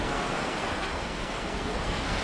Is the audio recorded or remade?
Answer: remade